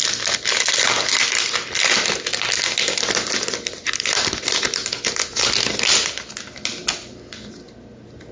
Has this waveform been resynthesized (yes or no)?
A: no